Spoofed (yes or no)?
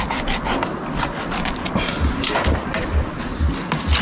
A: no